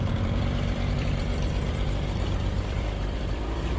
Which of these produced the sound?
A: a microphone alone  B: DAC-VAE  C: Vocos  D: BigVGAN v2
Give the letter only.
D